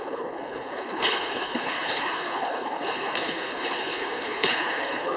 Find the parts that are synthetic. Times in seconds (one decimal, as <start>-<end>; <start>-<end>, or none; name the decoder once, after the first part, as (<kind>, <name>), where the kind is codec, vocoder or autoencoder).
0.0-5.2 (codec, HILCodec)